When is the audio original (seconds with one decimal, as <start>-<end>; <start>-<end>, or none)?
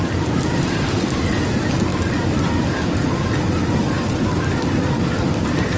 0.0-5.8